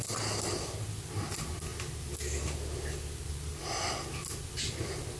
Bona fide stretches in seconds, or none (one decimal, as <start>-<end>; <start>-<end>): 0.0-5.2